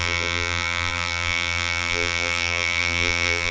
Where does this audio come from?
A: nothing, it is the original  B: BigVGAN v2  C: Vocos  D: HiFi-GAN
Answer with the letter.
B